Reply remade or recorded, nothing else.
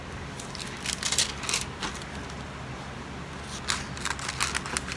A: recorded